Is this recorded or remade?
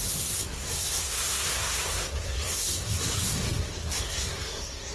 remade